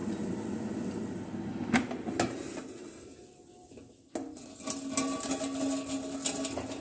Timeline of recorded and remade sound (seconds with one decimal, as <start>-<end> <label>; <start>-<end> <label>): 0.0-6.8 recorded